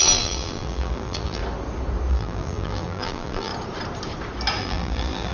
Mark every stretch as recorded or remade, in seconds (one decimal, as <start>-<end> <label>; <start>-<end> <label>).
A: 0.0-1.4 remade; 1.4-2.1 recorded; 2.1-3.5 remade; 3.5-4.6 recorded; 4.6-5.3 remade